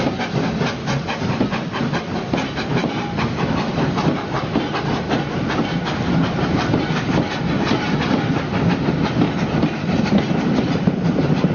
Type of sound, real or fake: real